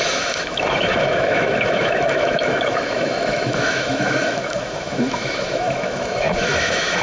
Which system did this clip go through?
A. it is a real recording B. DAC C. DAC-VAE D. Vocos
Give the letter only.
C